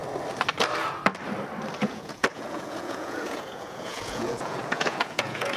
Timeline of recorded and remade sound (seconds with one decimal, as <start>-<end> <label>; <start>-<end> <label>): 0.0-1.8 recorded; 1.8-5.6 remade

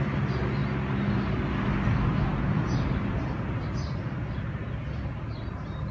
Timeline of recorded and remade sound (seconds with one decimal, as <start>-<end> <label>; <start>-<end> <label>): 0.0-5.9 recorded